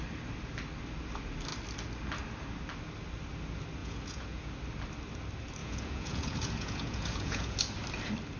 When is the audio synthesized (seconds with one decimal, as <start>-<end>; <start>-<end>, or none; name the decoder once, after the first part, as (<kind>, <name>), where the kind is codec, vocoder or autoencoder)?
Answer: 3.8-4.5 (vocoder, Vocos); 5.6-7.6